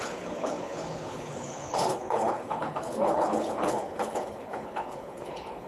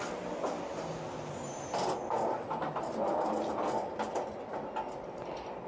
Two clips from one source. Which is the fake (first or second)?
first